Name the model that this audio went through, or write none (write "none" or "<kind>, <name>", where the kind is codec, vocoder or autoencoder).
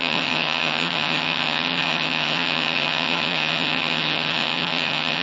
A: vocoder, HiFi-GAN